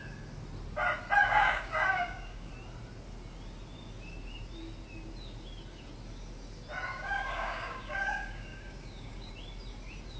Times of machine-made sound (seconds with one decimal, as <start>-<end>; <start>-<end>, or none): 1.2-2.5; 6.9-9.3